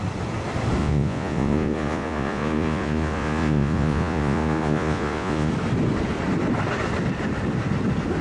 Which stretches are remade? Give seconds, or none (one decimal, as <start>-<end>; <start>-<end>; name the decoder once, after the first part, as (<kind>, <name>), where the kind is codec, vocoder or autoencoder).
0.8-5.5 (vocoder, Vocos)